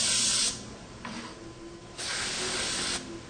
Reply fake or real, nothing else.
real